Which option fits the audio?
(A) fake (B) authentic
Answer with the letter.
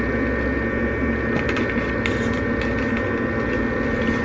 B